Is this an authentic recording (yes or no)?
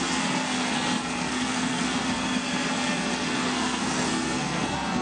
no